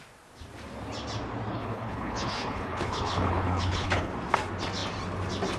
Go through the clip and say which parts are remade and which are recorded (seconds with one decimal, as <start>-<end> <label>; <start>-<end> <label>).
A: 0.0-1.5 recorded; 1.5-4.1 remade; 4.1-5.6 recorded